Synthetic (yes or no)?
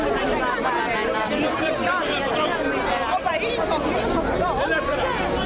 no